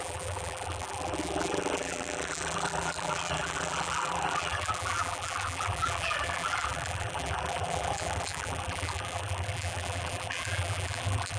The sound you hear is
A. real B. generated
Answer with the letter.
B